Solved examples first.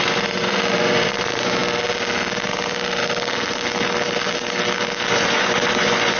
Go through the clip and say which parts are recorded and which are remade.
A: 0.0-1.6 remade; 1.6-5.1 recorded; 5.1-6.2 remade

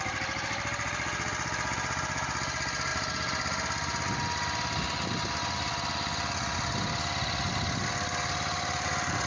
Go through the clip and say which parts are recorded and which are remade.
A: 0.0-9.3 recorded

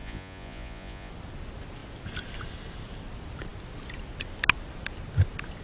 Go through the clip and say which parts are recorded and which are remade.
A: 0.0-1.1 remade; 1.1-5.6 recorded

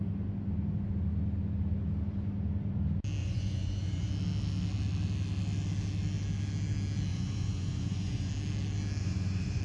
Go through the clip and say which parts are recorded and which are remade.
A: 0.0-3.2 recorded; 3.2-4.1 remade; 4.1-7.1 recorded; 7.1-8.3 remade; 8.3-9.0 recorded; 9.0-9.6 remade

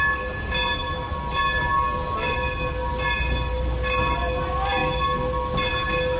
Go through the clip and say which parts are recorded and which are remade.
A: 0.0-6.2 recorded

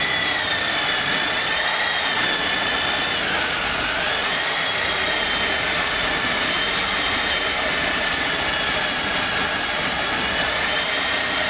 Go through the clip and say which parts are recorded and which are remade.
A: 0.0-11.5 recorded